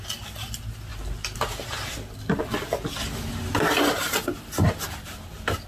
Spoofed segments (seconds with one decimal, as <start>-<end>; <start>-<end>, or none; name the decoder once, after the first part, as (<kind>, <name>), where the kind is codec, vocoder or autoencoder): 0.9-2.4 (vocoder, BigVGAN v2); 3.0-3.6; 4.3-5.3